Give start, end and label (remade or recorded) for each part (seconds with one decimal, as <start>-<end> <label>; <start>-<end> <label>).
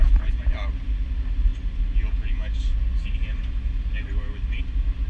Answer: 0.0-5.1 recorded